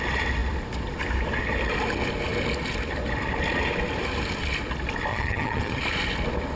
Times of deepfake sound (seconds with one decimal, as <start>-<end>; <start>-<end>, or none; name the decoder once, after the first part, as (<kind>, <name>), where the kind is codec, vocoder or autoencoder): 5.1-5.8 (vocoder, HiFi-GAN)